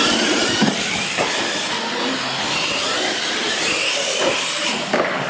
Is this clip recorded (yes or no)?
yes